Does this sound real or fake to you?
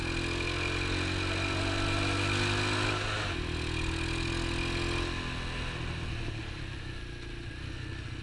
real